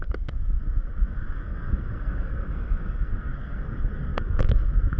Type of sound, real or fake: fake